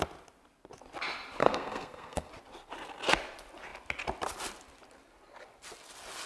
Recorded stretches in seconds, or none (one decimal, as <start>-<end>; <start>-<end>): 0.0-1.4; 2.3-6.3